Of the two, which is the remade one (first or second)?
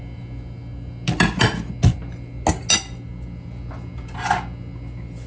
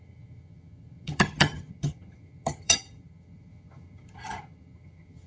second